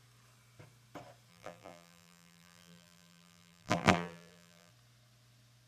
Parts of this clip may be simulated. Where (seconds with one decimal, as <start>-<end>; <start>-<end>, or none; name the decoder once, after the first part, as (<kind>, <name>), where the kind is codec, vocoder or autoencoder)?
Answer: 1.3-4.7 (vocoder, BigVGAN v2)